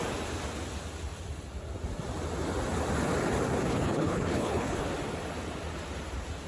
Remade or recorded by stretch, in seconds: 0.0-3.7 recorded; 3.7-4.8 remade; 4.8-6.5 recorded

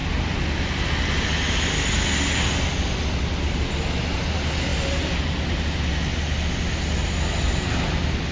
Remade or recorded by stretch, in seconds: 0.0-8.3 recorded